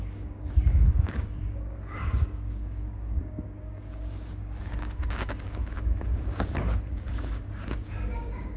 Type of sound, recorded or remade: remade